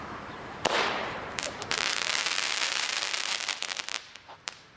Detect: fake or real fake